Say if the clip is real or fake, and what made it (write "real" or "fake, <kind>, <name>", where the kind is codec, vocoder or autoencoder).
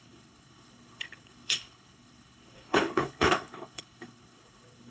fake, codec, HILCodec